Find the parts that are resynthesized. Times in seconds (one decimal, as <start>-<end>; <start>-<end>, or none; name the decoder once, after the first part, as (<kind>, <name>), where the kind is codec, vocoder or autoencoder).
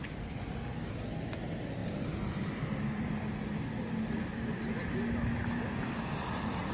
0.0-0.8 (vocoder, BigVGAN v2); 1.8-2.4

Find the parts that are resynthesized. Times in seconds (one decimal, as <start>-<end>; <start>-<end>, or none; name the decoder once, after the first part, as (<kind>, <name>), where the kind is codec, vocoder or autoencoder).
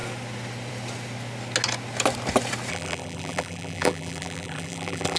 2.7-5.2 (vocoder, BigVGAN v2)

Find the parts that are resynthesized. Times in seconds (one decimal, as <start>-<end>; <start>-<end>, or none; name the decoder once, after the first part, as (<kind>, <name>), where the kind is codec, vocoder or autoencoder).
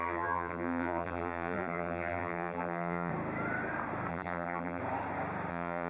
0.0-3.1 (vocoder, BigVGAN v2); 4.1-4.8; 5.5-5.9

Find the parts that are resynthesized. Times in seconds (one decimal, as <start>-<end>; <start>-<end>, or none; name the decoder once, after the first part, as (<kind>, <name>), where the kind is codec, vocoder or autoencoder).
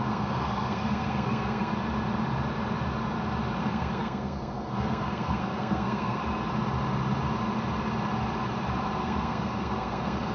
0.0-1.7 (codec, SNAC); 3.6-6.2; 9.0-10.3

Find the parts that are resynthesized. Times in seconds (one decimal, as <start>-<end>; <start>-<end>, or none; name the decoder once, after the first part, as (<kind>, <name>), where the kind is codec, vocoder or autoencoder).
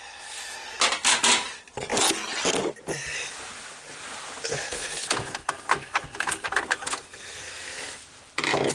4.5-8.0 (codec, SNAC)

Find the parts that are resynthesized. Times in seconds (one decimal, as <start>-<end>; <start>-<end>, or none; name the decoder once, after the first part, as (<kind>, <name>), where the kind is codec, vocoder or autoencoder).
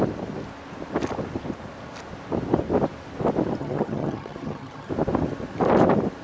3.6-4.9 (vocoder, HiFi-GAN)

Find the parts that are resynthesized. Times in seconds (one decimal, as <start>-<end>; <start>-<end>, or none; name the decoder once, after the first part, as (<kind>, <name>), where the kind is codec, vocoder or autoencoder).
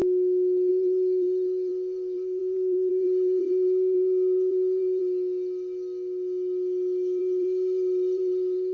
0.7-5.0 (vocoder, BigVGAN v2); 7.2-8.7